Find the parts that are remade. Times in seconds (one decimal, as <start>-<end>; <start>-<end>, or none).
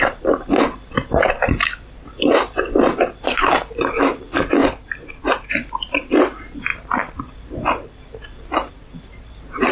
0.0-9.7